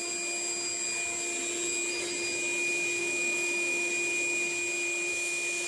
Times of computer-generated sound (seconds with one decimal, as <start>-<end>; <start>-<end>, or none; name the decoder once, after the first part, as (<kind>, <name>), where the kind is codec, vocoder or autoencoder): 3.0-3.9 (autoencoder, DAC-VAE); 5.1-5.7